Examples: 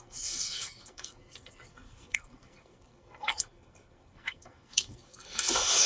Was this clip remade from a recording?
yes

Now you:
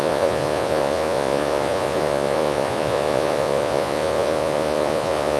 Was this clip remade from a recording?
yes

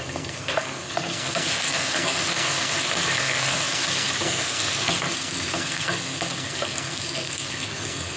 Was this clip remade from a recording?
yes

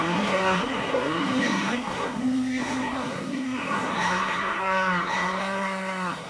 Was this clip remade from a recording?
yes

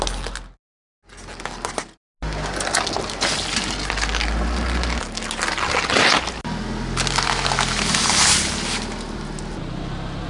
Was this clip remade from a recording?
no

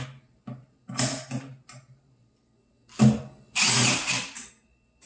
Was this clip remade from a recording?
no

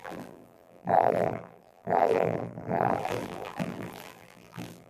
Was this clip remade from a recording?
yes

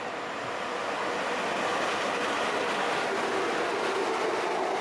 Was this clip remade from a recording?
no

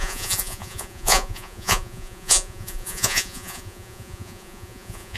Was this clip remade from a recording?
yes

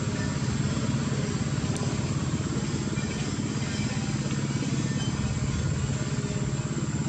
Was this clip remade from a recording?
no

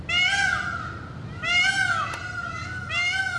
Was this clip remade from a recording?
no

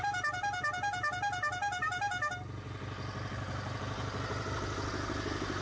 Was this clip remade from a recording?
no